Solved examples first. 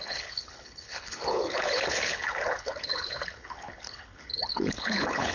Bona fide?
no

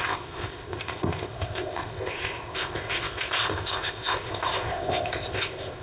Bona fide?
no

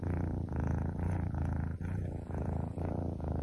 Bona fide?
no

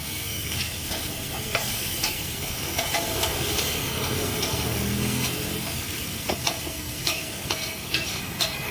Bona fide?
no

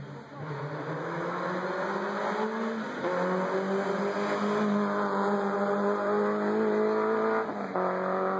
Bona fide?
yes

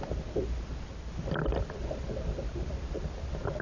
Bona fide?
yes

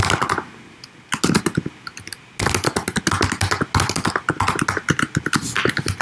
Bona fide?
yes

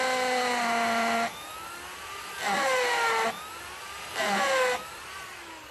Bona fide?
no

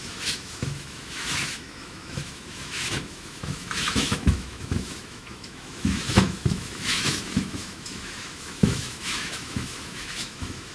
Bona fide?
no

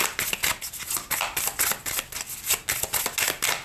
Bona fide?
yes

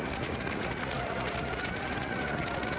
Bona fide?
no